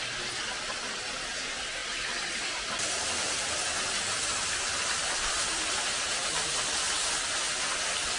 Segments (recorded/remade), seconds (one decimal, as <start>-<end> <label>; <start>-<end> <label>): 0.0-8.2 recorded